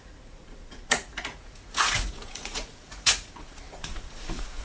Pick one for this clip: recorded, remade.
remade